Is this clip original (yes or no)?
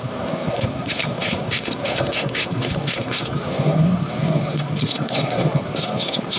no